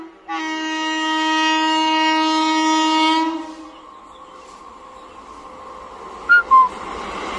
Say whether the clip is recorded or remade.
recorded